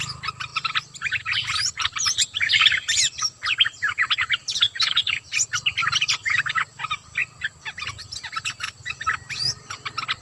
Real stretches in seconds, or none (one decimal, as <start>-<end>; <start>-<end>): 0.0-0.5; 5.1-5.8; 6.6-7.2; 8.9-10.2